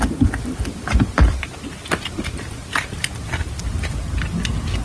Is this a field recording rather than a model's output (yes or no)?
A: yes